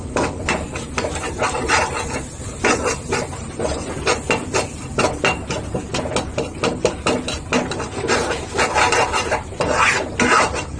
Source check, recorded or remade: recorded